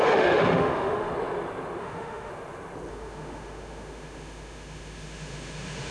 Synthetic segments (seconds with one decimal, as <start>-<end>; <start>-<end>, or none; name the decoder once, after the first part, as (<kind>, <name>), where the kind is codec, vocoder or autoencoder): 0.0-1.1 (autoencoder, DAC-VAE); 1.8-2.3; 2.9-5.9

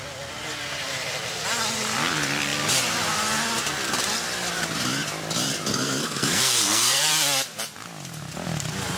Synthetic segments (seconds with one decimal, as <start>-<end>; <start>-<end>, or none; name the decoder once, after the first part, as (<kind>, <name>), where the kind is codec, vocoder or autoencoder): 5.7-7.1 (codec, SNAC)

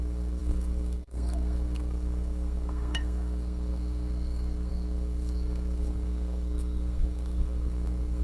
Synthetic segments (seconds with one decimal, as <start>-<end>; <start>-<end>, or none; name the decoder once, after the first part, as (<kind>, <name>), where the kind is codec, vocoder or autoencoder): 0.0-8.2 (codec, SNAC)

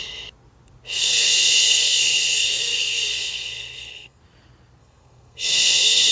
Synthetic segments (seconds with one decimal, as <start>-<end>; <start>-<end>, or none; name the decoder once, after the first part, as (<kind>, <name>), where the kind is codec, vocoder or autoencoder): 1.0-4.2 (codec, SNAC); 4.8-6.1

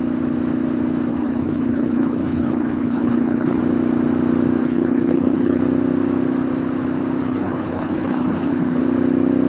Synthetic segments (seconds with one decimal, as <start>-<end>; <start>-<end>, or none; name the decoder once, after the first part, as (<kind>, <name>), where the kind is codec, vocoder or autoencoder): 1.1-3.6 (codec, HILCodec); 4.6-5.6; 7.2-8.8

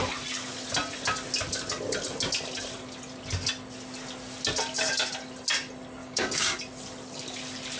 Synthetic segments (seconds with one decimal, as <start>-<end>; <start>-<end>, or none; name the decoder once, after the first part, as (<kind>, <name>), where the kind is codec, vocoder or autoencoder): 6.0-6.6 (codec, DAC)

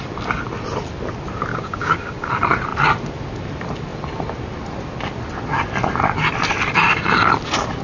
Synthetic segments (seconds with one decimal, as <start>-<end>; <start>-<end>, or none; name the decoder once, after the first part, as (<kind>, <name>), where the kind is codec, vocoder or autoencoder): 1.5-2.3 (codec, DAC)